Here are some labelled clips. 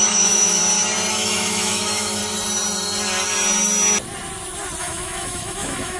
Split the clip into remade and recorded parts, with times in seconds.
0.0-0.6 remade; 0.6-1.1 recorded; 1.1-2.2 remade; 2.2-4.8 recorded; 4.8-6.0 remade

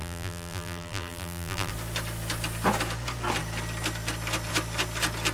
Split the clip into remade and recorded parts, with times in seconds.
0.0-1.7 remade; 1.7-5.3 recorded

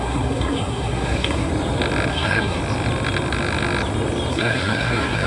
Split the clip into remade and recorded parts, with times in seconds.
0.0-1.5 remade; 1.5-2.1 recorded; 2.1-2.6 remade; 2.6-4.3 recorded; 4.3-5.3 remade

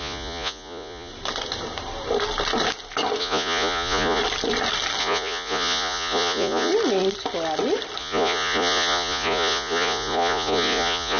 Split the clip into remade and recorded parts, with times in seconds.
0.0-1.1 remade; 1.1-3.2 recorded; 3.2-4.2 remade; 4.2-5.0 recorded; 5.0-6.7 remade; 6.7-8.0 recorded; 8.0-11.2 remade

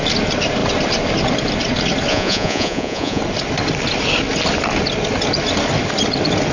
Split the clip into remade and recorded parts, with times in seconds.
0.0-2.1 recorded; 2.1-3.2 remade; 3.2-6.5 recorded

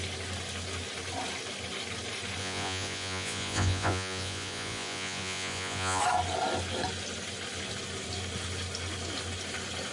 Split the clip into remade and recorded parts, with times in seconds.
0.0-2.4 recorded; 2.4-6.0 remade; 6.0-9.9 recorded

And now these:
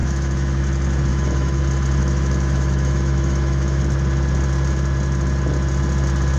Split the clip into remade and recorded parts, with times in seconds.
0.0-0.6 remade; 0.6-1.1 recorded; 1.1-1.6 remade; 1.6-2.0 recorded; 2.0-3.8 remade; 3.8-6.4 recorded